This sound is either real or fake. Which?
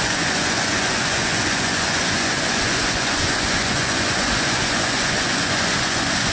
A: fake